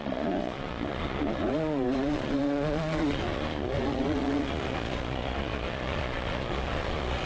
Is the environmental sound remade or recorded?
remade